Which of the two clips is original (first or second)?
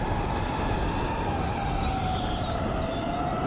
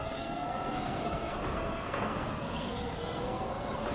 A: first